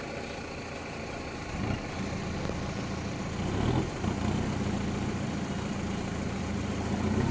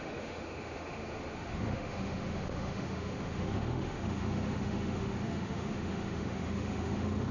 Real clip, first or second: first